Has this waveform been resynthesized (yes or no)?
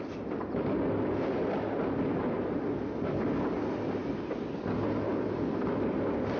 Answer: no